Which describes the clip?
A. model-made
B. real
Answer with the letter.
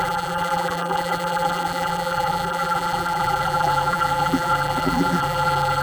A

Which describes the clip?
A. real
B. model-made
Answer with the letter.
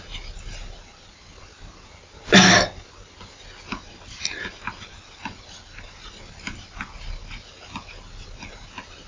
A